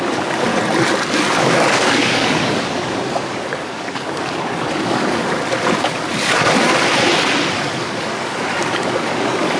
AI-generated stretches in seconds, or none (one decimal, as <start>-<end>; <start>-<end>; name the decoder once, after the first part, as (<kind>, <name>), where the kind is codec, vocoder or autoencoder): 0.0-0.5 (codec, DAC); 1.4-5.2; 5.8-6.7; 7.5-9.6